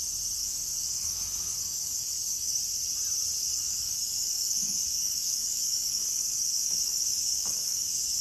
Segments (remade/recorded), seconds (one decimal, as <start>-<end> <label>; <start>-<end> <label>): 0.0-0.4 recorded; 0.4-2.6 remade; 2.6-3.4 recorded; 3.4-8.2 remade